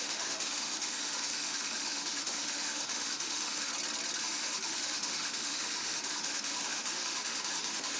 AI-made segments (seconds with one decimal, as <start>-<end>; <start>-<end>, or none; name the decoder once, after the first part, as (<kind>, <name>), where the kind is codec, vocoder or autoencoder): 0.0-3.7 (autoencoder, DAC-VAE); 4.2-8.0